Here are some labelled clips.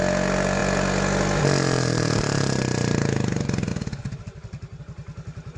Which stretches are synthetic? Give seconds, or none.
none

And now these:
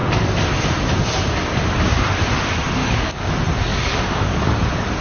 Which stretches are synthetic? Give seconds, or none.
2.8-3.3; 3.7-4.6

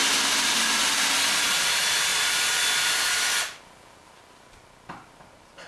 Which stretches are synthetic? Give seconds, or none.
none

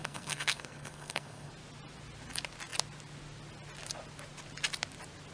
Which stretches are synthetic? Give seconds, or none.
0.0-1.5

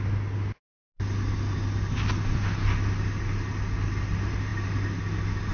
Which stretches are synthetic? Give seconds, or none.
none

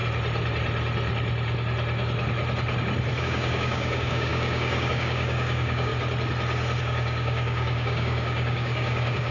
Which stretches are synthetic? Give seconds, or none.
3.2-5.9; 6.8-9.3